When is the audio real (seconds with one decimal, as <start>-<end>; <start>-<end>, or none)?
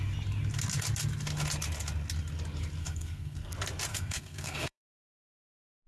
0.0-2.8; 3.5-3.9; 5.2-5.9